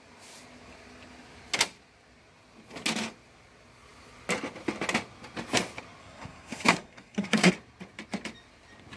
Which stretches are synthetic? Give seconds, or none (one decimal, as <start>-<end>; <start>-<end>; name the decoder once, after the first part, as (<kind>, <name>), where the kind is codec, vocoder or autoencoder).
6.0-7.5 (codec, SNAC)